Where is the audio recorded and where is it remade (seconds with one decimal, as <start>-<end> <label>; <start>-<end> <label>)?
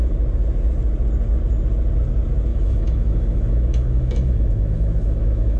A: 0.0-2.5 recorded; 2.5-5.6 remade